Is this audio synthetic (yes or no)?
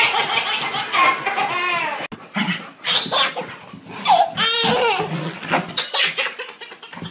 no